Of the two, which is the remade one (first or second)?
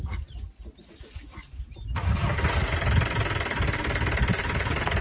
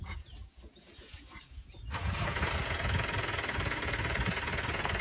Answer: second